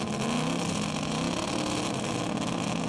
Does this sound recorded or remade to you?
recorded